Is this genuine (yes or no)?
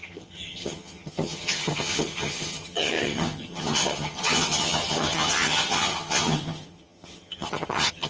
no